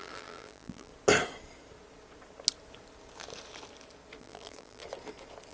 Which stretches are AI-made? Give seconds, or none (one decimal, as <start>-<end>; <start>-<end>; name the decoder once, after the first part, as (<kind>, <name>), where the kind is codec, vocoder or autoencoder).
0.0-0.9 (vocoder, BigVGAN v2); 4.2-4.8